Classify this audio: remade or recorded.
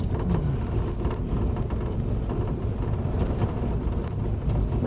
recorded